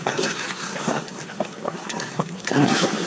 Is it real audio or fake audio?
fake